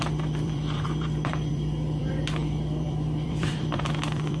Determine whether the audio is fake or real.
fake